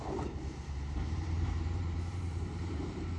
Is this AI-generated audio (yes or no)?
yes